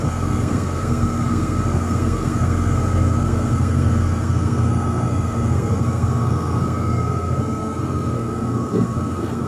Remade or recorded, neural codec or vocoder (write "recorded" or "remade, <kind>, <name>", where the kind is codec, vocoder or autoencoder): remade, codec, SNAC